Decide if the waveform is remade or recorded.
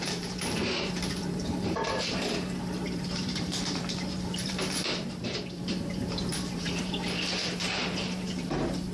remade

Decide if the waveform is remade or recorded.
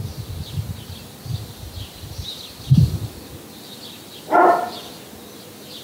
recorded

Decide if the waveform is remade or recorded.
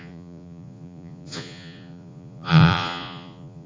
remade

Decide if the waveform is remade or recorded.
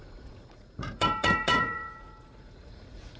remade